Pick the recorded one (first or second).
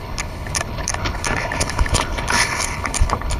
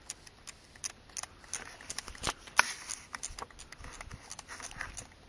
second